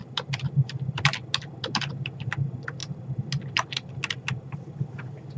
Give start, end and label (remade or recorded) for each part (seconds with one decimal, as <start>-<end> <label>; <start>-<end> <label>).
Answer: 0.0-0.9 remade; 0.9-5.4 recorded